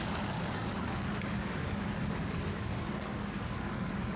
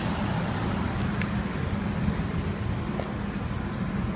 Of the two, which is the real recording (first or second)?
second